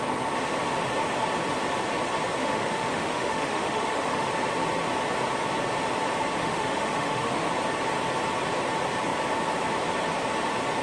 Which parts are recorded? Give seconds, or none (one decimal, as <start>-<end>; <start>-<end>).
0.0-2.4; 4.3-6.4; 7.5-10.8